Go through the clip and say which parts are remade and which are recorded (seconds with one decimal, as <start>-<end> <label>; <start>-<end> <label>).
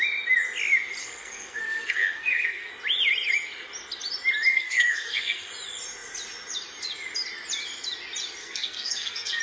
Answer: 0.0-1.0 recorded; 1.0-2.7 remade; 2.7-4.5 recorded; 4.5-5.5 remade; 5.5-8.4 recorded; 8.4-9.4 remade